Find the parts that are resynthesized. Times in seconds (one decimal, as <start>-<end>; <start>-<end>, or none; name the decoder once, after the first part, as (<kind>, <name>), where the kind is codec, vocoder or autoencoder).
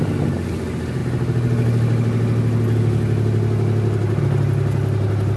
none